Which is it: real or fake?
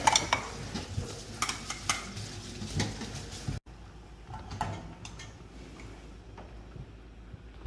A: real